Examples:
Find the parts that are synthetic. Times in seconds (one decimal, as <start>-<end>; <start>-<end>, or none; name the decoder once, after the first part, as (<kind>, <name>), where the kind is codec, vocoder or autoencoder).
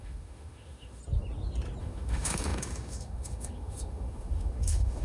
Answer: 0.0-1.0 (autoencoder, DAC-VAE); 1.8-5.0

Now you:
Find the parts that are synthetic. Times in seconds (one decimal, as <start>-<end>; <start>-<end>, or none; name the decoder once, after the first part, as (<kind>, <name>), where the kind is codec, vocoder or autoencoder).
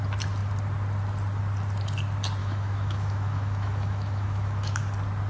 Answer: 2.4-4.8 (autoencoder, DAC-VAE)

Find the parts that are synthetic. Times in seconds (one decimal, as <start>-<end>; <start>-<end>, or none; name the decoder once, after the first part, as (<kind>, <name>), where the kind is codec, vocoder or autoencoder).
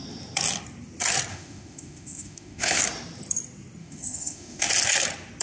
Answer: 1.3-2.8 (autoencoder, DAC-VAE); 3.8-4.7